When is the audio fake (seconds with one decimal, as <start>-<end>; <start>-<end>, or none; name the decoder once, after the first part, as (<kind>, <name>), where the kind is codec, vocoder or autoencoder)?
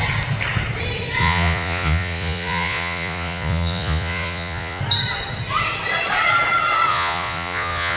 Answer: 1.2-4.8 (vocoder, Vocos); 6.9-8.0